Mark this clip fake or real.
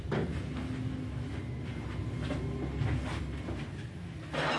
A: real